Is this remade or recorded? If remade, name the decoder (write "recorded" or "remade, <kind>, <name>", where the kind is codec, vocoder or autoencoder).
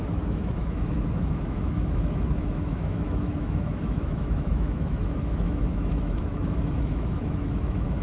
remade, autoencoder, DAC-VAE